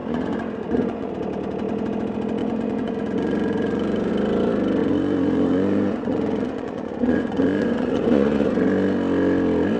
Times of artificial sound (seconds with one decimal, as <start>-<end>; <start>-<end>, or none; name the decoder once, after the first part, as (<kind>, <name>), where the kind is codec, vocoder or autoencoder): 0.0-1.1 (vocoder, Vocos); 2.4-4.1; 4.8-8.5